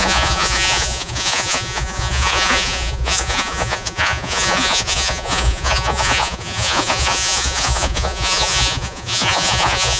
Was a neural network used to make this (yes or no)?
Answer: yes